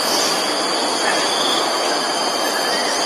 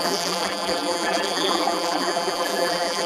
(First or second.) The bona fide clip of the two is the first